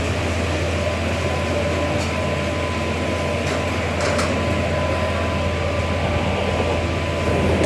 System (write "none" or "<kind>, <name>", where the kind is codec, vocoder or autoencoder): none